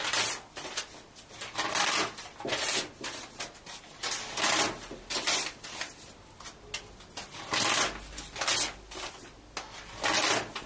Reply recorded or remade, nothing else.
recorded